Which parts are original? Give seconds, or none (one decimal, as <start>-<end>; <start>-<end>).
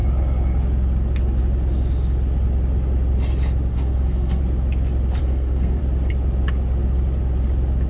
0.0-3.7; 4.4-5.2; 5.8-7.9